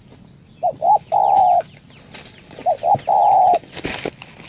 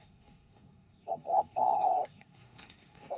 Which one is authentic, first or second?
first